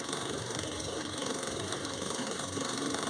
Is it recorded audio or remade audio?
remade